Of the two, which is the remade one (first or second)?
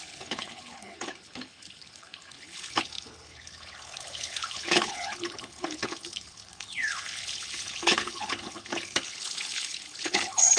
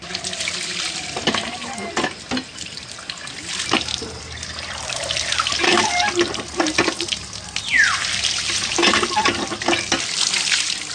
first